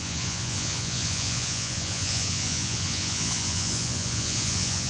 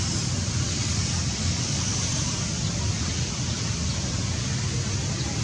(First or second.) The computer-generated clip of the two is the first